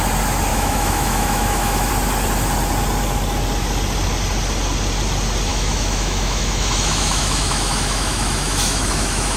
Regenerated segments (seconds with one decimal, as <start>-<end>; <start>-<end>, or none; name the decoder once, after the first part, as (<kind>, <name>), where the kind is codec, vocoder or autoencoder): 0.5-1.9 (autoencoder, DAC-VAE); 5.5-9.4

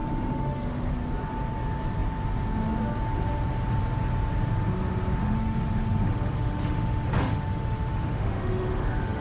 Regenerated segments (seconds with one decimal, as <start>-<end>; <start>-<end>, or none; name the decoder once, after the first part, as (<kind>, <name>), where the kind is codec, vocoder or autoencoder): 0.0-0.9 (autoencoder, DAC-VAE); 5.2-9.2

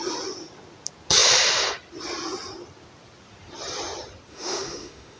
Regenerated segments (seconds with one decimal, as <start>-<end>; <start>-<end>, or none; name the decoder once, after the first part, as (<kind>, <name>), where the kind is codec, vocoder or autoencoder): 4.3-5.2 (autoencoder, DAC-VAE)

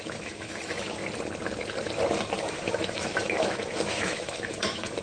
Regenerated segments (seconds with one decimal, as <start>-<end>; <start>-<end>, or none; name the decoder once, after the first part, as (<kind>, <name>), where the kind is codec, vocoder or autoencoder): 0.0-1.0 (autoencoder, DAC-VAE); 2.4-5.0

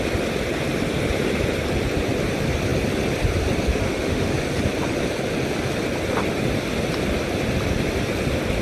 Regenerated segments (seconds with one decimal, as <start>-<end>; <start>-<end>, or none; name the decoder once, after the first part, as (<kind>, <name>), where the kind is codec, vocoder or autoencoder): 3.7-4.3 (autoencoder, DAC-VAE)

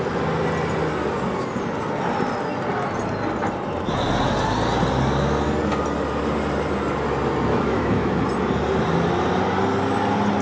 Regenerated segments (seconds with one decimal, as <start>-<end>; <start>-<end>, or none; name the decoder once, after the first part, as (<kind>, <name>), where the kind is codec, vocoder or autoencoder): 7.5-8.2 (autoencoder, DAC-VAE)